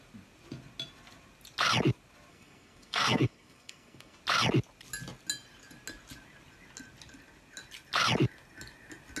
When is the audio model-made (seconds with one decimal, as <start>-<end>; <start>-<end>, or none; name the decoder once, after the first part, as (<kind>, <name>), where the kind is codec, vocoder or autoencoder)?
2.3-4.2 (codec, SNAC)